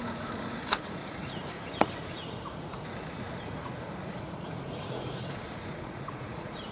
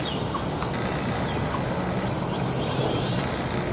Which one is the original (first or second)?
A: second